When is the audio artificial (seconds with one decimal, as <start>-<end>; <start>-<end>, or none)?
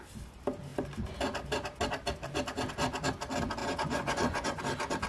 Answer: 3.6-4.6